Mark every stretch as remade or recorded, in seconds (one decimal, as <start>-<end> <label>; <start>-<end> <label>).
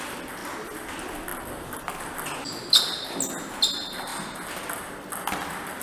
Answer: 0.0-5.8 recorded